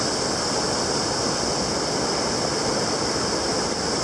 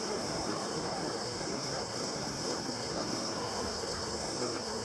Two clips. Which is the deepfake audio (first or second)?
second